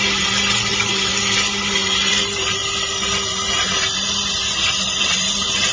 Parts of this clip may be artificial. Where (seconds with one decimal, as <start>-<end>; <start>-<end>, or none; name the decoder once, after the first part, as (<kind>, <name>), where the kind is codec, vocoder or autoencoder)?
none